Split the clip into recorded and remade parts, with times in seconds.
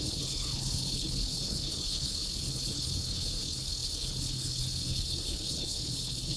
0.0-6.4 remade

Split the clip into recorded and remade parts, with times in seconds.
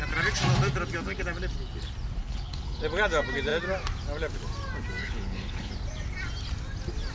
0.0-2.2 recorded; 2.2-2.8 remade; 2.8-5.0 recorded; 5.0-5.7 remade; 5.7-7.1 recorded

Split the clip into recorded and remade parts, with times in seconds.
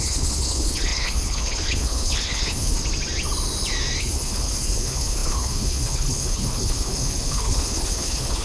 0.0-2.8 remade; 2.8-4.0 recorded; 4.0-8.4 remade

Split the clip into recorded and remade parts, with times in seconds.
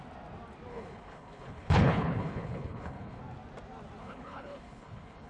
0.0-0.7 recorded; 0.7-3.2 remade; 3.2-4.0 recorded; 4.0-5.3 remade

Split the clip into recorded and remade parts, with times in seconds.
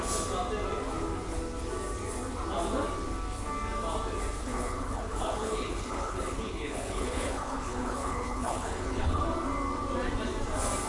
0.0-4.4 recorded; 4.4-9.2 remade; 9.2-10.9 recorded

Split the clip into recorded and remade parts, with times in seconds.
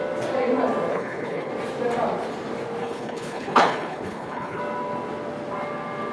0.0-0.9 recorded; 0.9-1.5 remade; 1.5-2.8 recorded; 2.8-4.6 remade; 4.6-6.1 recorded